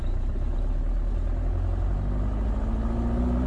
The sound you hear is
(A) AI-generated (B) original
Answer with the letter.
B